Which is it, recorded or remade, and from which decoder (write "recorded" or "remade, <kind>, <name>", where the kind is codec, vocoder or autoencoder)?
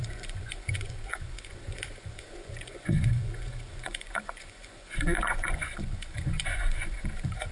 remade, vocoder, Vocos